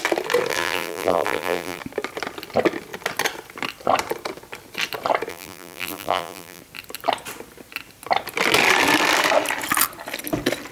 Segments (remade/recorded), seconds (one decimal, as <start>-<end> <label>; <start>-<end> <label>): 0.0-0.5 recorded; 0.5-1.8 remade; 1.8-5.3 recorded; 5.3-6.6 remade; 6.6-10.7 recorded